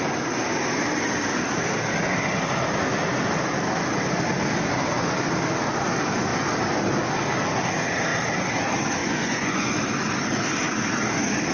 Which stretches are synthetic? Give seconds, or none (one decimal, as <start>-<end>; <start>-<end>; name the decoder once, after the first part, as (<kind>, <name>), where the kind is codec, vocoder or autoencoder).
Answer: 9.0-9.7 (vocoder, Vocos)

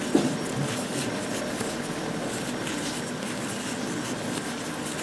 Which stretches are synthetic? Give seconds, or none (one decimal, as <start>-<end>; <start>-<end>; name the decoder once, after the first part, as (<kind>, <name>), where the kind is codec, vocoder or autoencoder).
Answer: none

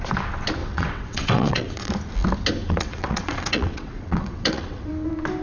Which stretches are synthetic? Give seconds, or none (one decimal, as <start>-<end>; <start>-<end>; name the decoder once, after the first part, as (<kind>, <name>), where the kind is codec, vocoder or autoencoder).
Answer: 0.6-1.9 (vocoder, WaveNeXt); 2.6-4.9

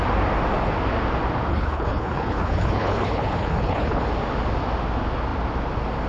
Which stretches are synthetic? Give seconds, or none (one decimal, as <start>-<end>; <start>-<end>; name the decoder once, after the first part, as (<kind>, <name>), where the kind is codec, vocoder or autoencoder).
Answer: 1.5-4.0 (codec, HILCodec)

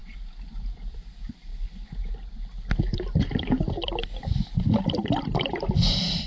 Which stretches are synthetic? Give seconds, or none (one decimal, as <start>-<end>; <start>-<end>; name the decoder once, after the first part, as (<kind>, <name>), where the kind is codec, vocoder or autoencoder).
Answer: 0.9-1.5 (vocoder, BigVGAN v2); 2.9-4.1; 4.7-6.3

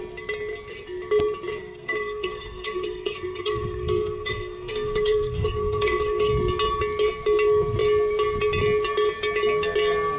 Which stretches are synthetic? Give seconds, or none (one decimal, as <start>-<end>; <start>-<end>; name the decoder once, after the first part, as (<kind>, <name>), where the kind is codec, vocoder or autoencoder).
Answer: 1.6-6.3 (codec, SNAC)

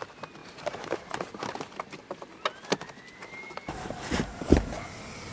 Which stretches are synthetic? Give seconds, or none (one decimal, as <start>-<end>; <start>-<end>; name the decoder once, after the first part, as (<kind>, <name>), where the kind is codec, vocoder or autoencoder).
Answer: 0.4-1.4 (vocoder, BigVGAN v2)